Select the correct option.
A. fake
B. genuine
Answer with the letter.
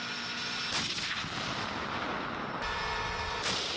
B